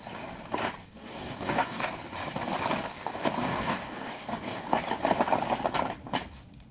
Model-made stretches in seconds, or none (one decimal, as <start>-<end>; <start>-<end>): 0.8-1.9; 2.9-4.8